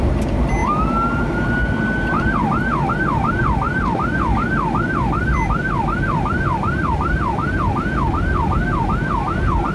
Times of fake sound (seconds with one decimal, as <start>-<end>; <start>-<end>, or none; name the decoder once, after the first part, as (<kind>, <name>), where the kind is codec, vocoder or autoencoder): none